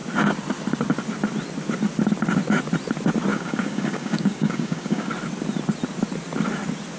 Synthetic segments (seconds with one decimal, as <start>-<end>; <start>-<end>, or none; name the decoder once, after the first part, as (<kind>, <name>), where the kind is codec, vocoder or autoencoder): 3.3-5.1 (codec, DAC)